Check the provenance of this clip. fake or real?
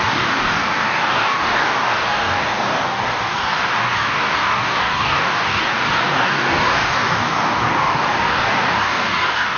fake